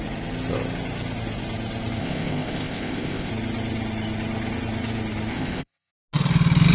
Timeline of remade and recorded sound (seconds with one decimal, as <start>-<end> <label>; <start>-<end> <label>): 0.0-2.0 recorded; 2.0-3.3 remade; 3.3-5.3 recorded; 5.3-5.9 remade; 5.9-6.7 recorded